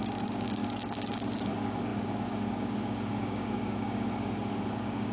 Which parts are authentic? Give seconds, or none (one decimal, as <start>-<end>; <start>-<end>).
none